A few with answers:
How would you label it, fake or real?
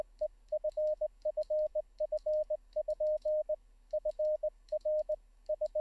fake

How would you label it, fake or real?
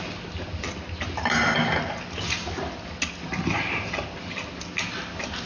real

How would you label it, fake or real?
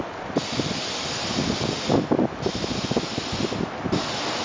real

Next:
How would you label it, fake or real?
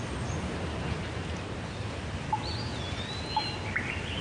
real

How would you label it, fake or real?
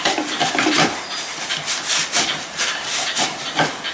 fake